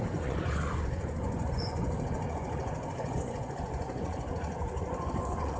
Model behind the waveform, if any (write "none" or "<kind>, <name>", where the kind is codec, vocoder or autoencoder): vocoder, Vocos